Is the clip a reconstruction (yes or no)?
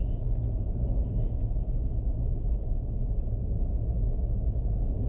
no